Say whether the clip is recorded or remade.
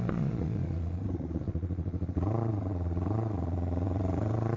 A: remade